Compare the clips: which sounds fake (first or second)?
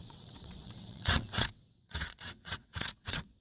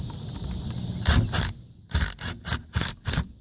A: first